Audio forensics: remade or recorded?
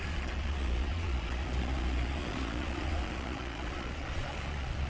remade